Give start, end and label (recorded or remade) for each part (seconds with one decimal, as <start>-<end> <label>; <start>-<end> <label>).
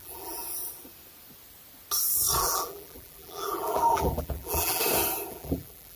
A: 0.0-0.4 remade; 0.4-2.4 recorded; 2.4-4.8 remade; 4.8-5.3 recorded; 5.3-6.0 remade